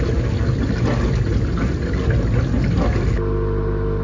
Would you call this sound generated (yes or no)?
no